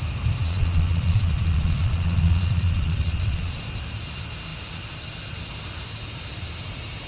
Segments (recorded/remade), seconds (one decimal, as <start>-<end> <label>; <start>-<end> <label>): 0.0-0.4 recorded; 0.4-3.6 remade; 3.6-7.1 recorded